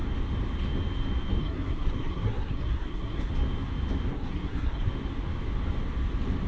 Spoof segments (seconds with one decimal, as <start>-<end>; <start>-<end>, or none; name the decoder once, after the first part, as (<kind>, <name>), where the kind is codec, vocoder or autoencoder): 1.4-3.3 (codec, SNAC); 4.1-4.9